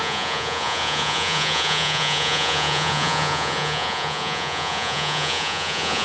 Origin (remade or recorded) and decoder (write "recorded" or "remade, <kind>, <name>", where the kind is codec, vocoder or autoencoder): remade, vocoder, Vocos